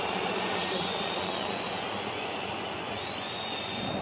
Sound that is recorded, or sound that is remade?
remade